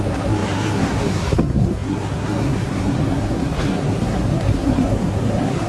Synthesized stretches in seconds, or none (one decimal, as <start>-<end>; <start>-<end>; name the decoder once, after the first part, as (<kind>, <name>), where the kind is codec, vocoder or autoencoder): 0.0-5.7 (codec, SNAC)